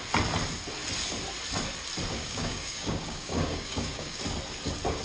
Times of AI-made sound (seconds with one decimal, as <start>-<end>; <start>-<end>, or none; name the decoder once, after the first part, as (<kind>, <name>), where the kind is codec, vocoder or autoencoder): 2.1-4.2 (codec, DAC)

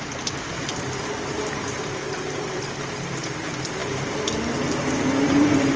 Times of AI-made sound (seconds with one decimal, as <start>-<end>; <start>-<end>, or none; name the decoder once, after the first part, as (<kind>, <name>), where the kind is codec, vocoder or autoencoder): 0.0-5.8 (vocoder, BigVGAN v2)

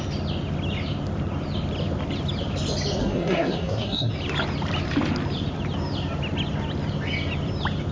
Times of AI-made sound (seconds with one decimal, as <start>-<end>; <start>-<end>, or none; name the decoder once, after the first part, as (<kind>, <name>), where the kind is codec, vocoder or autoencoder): 3.0-4.1 (codec, SNAC)

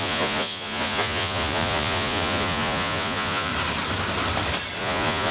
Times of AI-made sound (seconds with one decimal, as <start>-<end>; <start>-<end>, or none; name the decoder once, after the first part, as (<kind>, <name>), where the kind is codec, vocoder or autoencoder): 0.0-3.5 (vocoder, Vocos); 4.8-5.3

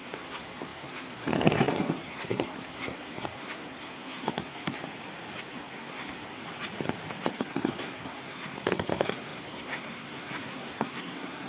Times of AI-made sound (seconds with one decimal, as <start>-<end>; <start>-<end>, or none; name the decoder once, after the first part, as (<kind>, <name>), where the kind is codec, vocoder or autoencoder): 0.0-4.8 (codec, SNAC); 5.4-6.4; 7.3-11.5

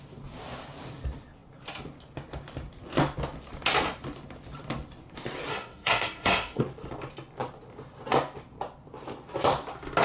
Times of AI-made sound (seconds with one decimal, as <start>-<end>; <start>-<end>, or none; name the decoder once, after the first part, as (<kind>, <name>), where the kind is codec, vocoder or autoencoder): 5.5-6.6 (codec, SNAC)